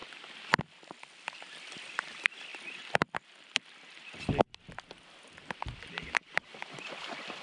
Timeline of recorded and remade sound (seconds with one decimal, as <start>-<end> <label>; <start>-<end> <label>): 0.0-7.4 recorded